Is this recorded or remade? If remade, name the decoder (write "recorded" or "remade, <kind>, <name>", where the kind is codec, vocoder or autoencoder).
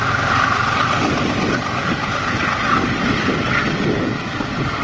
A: recorded